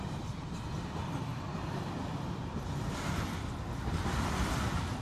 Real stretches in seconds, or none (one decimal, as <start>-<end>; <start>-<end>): 0.0-5.0